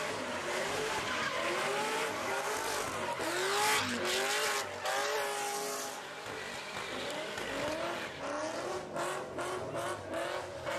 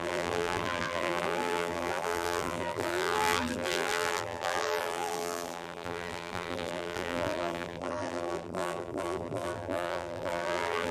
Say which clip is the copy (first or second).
second